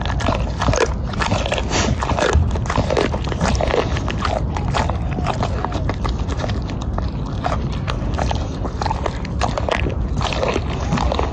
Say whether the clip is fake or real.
real